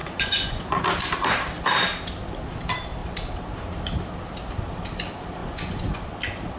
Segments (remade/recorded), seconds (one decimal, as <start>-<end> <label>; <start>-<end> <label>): 0.0-0.8 remade; 0.8-5.4 recorded; 5.4-6.0 remade; 6.0-6.6 recorded